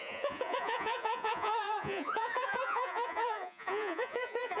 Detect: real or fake fake